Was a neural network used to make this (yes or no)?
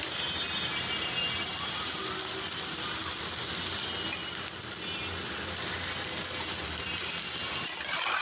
no